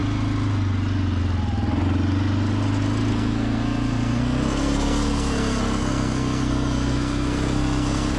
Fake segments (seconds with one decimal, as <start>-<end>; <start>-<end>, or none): 3.1-8.2